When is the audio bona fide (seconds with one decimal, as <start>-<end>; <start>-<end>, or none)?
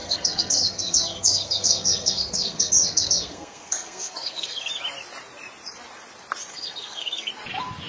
4.7-6.5; 7.3-7.9